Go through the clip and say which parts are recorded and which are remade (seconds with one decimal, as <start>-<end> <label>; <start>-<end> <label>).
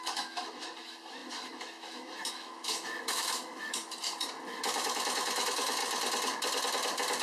0.0-3.8 remade; 3.8-4.5 recorded; 4.5-5.8 remade; 5.8-7.2 recorded